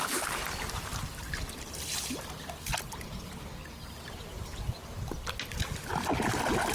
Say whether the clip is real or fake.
real